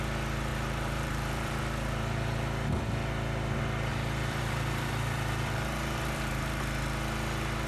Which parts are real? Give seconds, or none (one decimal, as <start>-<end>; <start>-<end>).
0.0-0.5; 1.6-3.9; 6.6-7.7